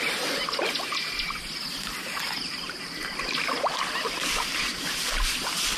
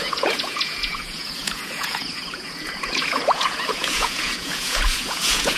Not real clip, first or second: second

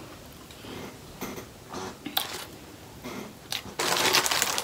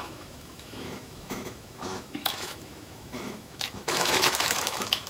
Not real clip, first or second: second